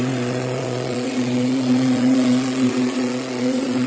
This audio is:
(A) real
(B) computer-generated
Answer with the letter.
B